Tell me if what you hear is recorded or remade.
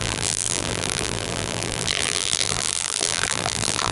remade